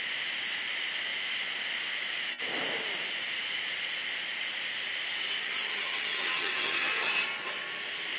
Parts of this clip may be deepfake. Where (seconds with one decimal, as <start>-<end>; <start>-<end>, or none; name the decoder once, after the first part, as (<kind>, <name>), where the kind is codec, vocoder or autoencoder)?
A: 5.4-7.1 (vocoder, HiFi-GAN)